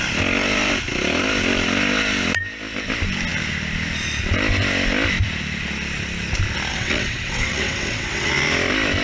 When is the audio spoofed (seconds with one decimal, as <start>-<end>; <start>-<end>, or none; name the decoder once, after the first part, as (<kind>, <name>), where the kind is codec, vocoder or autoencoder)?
6.7-8.3 (vocoder, WaveNeXt)